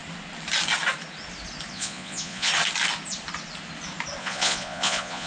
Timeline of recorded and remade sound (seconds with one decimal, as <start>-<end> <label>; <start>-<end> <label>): 0.0-1.7 recorded; 1.7-2.5 remade; 2.5-4.2 recorded; 4.2-5.3 remade